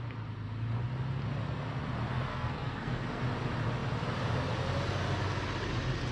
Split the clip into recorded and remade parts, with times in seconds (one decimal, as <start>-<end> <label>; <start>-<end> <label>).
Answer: 0.0-2.3 recorded; 2.3-3.2 remade; 3.2-6.1 recorded